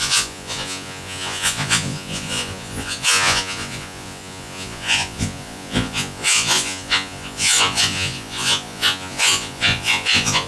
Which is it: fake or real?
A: fake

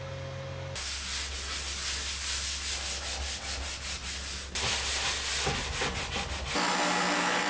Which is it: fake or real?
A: real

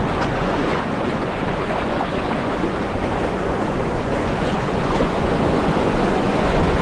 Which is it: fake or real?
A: fake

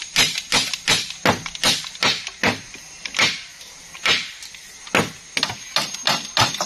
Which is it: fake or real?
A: real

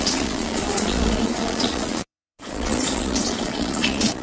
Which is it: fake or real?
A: fake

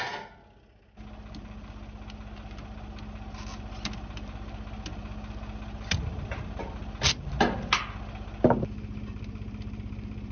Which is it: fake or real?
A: real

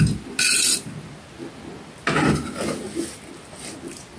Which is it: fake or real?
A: real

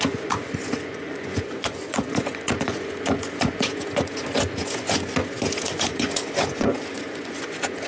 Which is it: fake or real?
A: fake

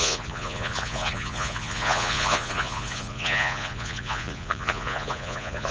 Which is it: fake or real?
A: fake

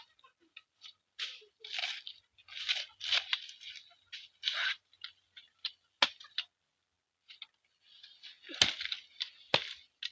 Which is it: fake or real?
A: real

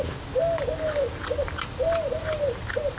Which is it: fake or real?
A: real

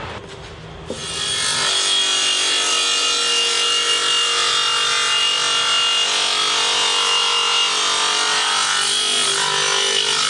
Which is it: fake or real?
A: real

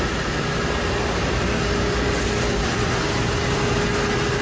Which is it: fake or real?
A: real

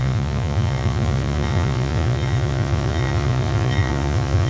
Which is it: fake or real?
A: fake